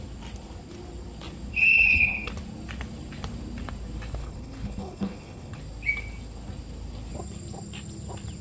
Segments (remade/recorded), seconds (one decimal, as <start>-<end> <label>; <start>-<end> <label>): 0.0-1.5 recorded; 1.5-2.3 remade; 2.3-4.2 recorded; 4.2-5.6 remade; 5.6-8.4 recorded